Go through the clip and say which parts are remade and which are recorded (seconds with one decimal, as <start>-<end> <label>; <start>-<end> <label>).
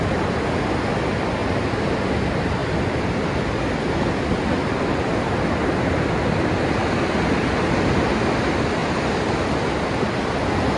0.0-2.6 recorded; 2.6-3.9 remade; 3.9-8.8 recorded; 8.8-9.9 remade; 9.9-10.8 recorded